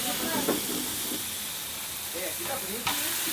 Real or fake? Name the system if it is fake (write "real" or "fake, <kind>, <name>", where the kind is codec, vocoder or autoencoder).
real